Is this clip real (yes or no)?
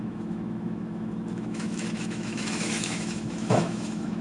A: no